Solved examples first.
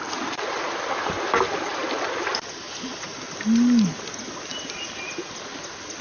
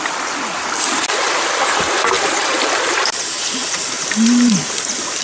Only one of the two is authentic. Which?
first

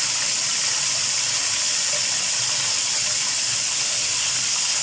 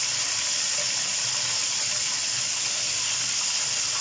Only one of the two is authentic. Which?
second